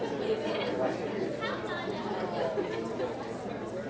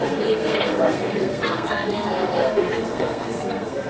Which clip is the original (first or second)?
first